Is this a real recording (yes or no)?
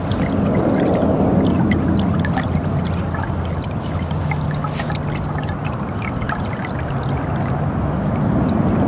yes